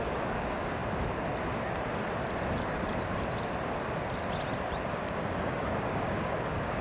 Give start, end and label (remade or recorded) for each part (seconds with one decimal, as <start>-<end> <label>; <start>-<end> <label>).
0.0-0.8 remade; 0.8-4.9 recorded; 4.9-6.8 remade